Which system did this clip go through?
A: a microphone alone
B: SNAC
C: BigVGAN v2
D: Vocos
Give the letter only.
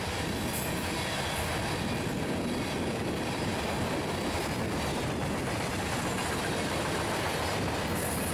A